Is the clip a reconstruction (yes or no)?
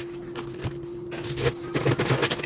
no